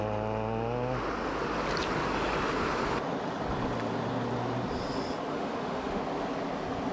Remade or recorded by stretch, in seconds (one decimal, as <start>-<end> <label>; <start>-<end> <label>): 0.0-5.3 recorded; 5.3-6.0 remade; 6.0-6.9 recorded

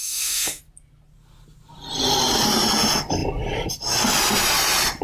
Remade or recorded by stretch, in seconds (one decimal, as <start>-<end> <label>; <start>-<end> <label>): 0.0-0.6 remade; 0.6-5.0 recorded

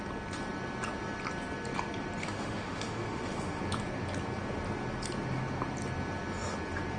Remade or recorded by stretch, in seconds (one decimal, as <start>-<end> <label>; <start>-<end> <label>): 0.0-2.2 recorded; 2.2-3.6 remade; 3.6-7.0 recorded

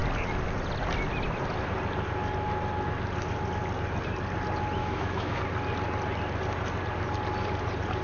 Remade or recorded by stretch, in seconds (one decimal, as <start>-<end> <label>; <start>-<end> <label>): 0.0-4.8 recorded; 4.8-5.4 remade; 5.4-8.0 recorded

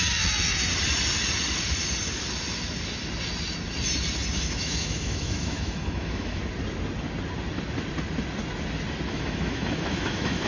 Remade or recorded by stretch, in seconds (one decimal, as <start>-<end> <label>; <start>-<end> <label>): 0.0-0.7 remade; 0.7-4.4 recorded; 4.4-6.4 remade; 6.4-9.1 recorded; 9.1-10.5 remade

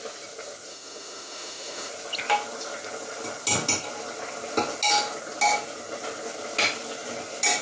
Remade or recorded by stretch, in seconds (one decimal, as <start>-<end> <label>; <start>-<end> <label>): 0.0-0.7 recorded; 0.7-1.9 remade; 1.9-7.6 recorded

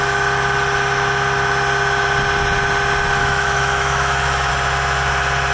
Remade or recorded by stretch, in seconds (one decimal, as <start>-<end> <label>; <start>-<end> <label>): 0.0-3.2 recorded; 3.2-4.5 remade; 4.5-5.5 recorded